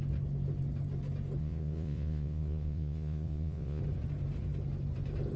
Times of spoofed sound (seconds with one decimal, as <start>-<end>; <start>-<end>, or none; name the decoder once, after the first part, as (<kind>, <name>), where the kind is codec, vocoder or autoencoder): 1.4-3.8 (vocoder, Vocos)

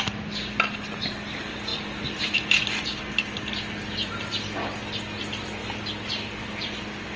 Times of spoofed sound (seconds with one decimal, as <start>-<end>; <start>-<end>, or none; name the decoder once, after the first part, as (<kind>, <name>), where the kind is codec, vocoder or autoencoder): none

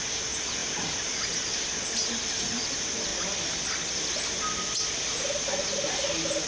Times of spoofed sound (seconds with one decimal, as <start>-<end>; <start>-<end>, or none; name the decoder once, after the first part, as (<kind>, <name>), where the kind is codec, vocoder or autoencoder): none

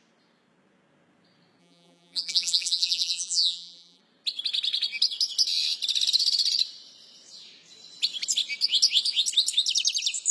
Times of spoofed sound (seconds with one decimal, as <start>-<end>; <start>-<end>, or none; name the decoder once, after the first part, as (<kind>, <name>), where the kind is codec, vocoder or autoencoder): 1.6-4.0 (vocoder, BigVGAN v2)

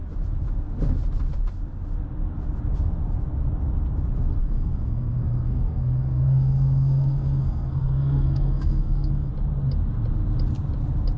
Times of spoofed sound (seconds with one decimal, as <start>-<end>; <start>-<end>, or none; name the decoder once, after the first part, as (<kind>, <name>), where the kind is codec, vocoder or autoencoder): 4.4-9.3 (codec, SNAC)

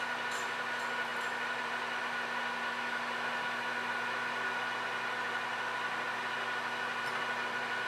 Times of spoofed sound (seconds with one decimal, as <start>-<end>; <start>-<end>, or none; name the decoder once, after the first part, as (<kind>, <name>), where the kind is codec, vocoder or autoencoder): 1.1-2.0 (vocoder, BigVGAN v2)